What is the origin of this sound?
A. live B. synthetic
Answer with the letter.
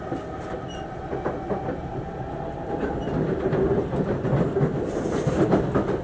A